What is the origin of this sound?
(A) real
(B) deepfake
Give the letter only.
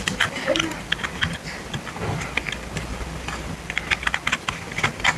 A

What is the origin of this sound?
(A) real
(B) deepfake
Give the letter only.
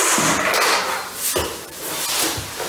A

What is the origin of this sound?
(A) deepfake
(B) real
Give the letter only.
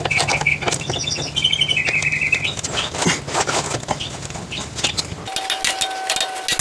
B